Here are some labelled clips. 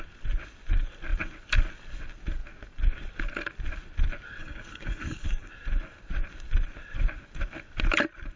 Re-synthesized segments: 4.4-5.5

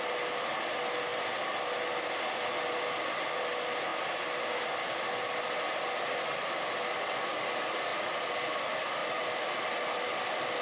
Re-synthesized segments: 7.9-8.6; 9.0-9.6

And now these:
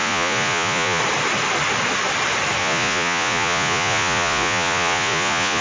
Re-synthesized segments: 0.0-1.0; 2.6-5.6